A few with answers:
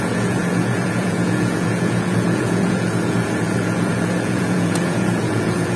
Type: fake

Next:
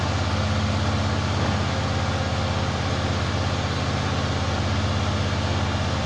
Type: real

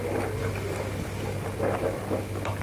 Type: real